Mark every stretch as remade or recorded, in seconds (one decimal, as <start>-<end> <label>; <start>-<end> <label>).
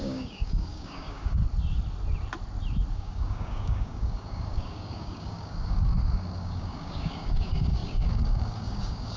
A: 0.0-1.4 remade; 1.4-2.9 recorded; 2.9-9.2 remade